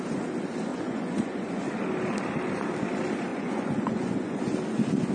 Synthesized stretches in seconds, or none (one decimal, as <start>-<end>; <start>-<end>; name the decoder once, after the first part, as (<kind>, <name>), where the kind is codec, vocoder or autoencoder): 0.7-1.7 (vocoder, Vocos); 3.3-4.4